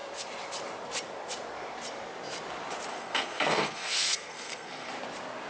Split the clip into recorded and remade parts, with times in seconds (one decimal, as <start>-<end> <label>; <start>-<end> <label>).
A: 0.0-2.9 recorded; 2.9-4.9 remade; 4.9-5.5 recorded